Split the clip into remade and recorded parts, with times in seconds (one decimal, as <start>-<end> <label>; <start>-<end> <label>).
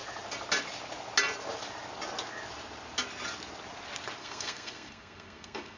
0.0-4.2 recorded; 4.2-5.8 remade